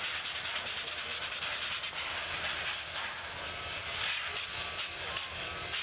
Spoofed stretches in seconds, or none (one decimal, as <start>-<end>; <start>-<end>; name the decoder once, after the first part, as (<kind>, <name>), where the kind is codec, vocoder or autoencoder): none